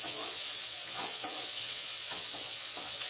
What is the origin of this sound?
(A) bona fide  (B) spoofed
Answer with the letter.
B